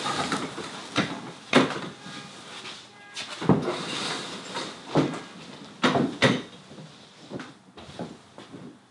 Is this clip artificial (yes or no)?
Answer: no